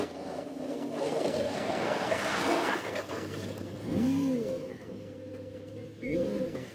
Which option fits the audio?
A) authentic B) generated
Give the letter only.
B